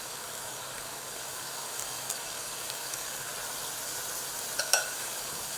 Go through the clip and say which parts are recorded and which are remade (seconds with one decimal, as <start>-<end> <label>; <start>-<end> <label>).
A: 0.0-3.3 remade; 3.3-4.6 recorded; 4.6-5.6 remade